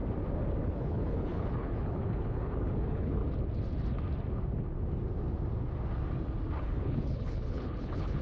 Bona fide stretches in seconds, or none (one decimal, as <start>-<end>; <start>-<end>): 0.0-0.6; 3.2-6.6

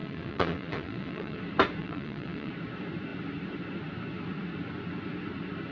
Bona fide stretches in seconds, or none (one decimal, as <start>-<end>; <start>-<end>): 1.4-1.8; 2.5-5.7

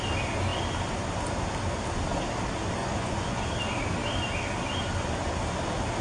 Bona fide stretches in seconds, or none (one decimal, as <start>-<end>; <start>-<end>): 0.0-2.8; 3.4-6.0

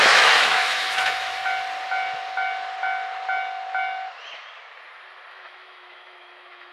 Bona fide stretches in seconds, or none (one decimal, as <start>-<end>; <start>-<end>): 1.4-5.3

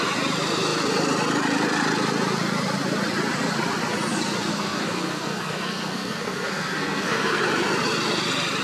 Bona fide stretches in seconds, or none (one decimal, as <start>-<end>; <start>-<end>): 0.0-4.5; 7.4-8.6

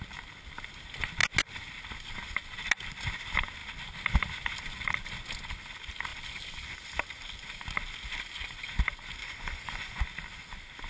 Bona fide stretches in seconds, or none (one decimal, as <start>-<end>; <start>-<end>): 0.0-9.2; 10.0-10.9

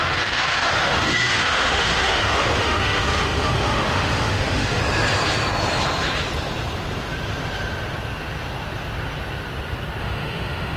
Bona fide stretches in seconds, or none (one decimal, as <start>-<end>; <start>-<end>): 4.8-10.0

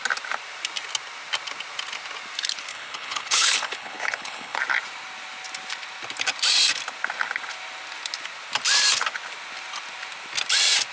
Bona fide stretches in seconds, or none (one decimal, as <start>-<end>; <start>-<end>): 0.0-2.7; 4.6-10.9